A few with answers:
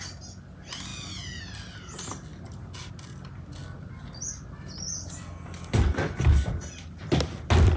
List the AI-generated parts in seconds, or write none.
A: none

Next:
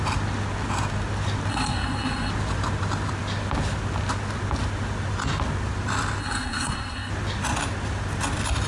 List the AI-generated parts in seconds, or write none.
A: 1.5-2.3 (codec, SNAC); 6.2-7.1

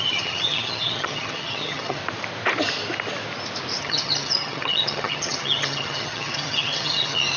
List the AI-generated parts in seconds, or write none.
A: 0.0-2.0 (vocoder, HiFi-GAN); 3.8-7.4